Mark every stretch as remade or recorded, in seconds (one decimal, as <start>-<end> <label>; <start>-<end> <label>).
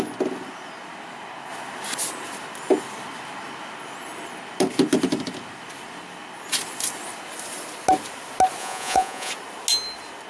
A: 0.0-8.6 recorded; 8.6-9.3 remade; 9.3-10.3 recorded